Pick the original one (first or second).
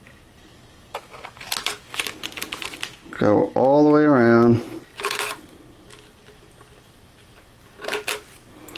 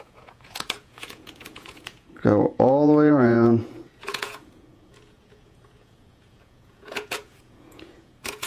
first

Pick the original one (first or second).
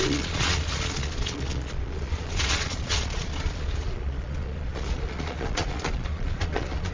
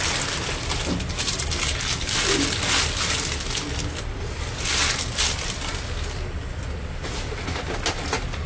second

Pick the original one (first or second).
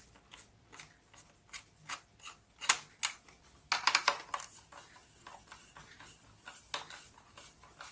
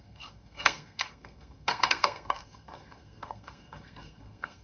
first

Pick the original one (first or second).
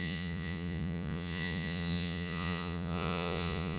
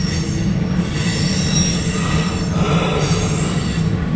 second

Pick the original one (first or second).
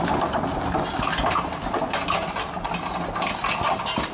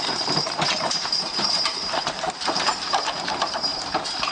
first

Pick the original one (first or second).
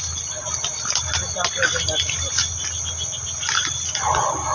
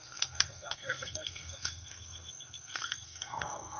first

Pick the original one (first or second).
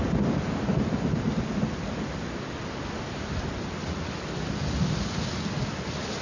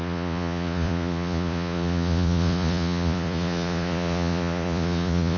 first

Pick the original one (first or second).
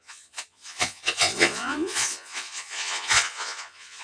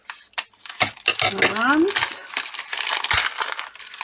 second